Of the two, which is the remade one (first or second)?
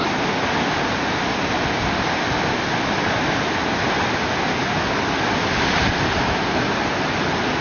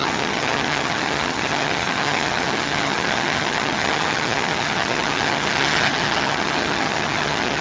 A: second